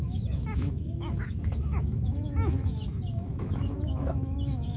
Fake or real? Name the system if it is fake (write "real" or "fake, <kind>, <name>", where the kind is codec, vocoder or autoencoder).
fake, autoencoder, DAC-VAE